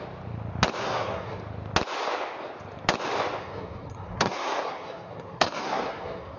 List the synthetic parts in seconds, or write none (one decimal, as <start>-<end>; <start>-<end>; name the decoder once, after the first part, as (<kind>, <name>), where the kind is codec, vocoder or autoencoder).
0.8-1.4 (codec, SNAC); 3.4-6.4